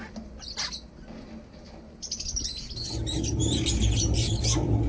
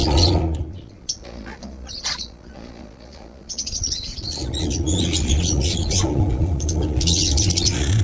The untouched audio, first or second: first